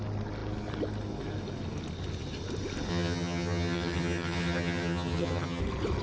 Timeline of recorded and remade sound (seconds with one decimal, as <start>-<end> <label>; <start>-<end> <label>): 0.0-2.9 recorded; 2.9-5.6 remade; 5.6-6.0 recorded